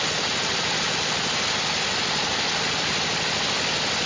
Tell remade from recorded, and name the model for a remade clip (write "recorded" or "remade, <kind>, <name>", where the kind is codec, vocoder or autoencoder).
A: recorded